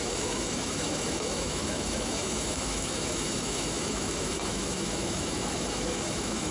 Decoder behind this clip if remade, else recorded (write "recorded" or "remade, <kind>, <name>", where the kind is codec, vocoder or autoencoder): remade, autoencoder, DAC-VAE